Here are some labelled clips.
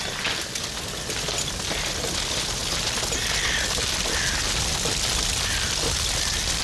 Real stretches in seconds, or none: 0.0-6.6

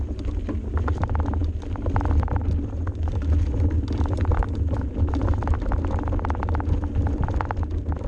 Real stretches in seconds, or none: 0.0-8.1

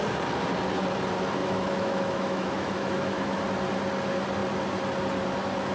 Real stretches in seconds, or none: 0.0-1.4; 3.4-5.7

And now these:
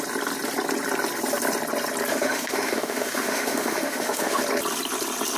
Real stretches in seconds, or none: 0.0-2.1; 4.4-5.4

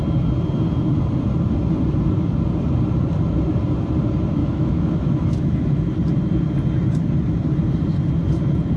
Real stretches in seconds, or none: 0.0-4.4; 5.9-8.8

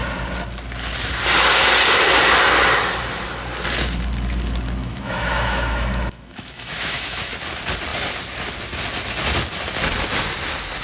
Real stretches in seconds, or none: 0.0-4.8; 7.3-10.8

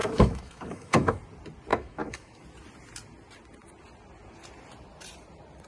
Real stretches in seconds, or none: 1.2-1.7; 2.4-5.7

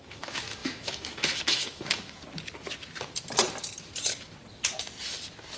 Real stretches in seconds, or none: 2.2-5.6